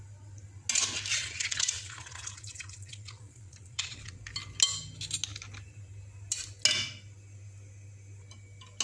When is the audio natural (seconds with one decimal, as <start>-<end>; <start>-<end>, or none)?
0.0-1.1; 4.2-8.8